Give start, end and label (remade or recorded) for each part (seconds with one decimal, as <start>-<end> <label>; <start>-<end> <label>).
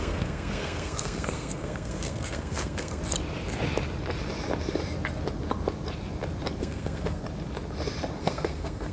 0.0-3.0 remade; 3.0-6.6 recorded; 6.6-7.2 remade; 7.2-8.2 recorded; 8.2-8.9 remade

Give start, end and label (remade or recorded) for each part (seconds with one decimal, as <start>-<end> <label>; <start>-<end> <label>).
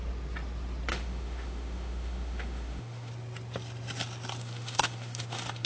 0.0-0.9 recorded; 0.9-3.1 remade; 3.1-4.4 recorded; 4.4-5.7 remade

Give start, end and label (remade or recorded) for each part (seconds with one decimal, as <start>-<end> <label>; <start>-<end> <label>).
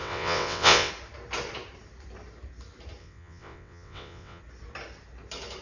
0.0-0.9 remade; 0.9-3.0 recorded; 3.0-4.4 remade; 4.4-5.6 recorded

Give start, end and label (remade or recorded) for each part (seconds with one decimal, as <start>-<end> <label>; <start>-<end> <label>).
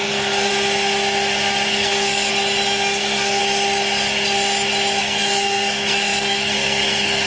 0.0-0.5 remade; 0.5-1.7 recorded; 1.7-2.3 remade; 2.3-3.0 recorded; 3.0-3.4 remade; 3.4-5.0 recorded; 5.0-7.3 remade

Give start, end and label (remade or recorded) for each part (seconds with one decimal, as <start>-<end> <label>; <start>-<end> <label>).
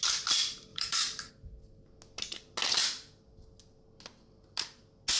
0.0-0.7 recorded; 0.7-1.3 remade; 1.3-5.2 recorded